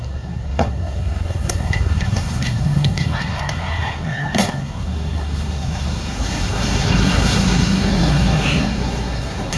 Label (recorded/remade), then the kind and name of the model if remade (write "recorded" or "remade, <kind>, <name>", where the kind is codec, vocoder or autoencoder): remade, codec, SNAC